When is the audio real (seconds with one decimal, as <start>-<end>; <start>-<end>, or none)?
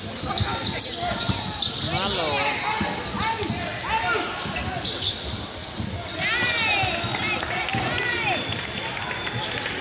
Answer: 0.0-7.7; 9.0-9.8